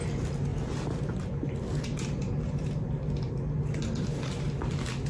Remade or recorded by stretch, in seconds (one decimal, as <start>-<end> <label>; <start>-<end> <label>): 0.0-5.1 recorded